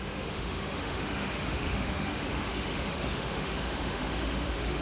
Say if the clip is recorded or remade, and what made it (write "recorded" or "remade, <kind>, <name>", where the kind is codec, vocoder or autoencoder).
remade, autoencoder, DAC-VAE